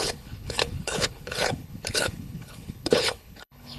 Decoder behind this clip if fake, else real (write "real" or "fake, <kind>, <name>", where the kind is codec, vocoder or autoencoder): fake, codec, HILCodec